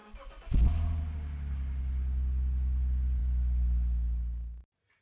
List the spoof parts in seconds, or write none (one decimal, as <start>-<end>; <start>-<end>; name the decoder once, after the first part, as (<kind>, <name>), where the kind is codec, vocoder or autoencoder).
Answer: none